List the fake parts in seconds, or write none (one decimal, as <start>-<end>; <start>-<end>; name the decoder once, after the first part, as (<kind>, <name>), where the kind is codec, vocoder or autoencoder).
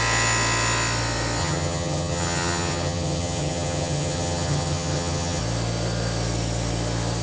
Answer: 1.4-5.4 (vocoder, HiFi-GAN)